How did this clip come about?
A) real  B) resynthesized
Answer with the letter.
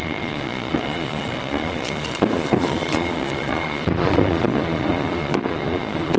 B